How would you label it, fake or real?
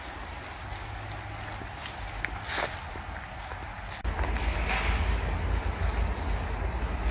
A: real